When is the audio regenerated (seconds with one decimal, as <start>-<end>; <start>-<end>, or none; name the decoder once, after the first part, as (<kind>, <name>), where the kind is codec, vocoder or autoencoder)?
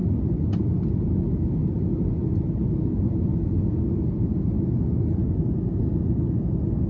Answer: none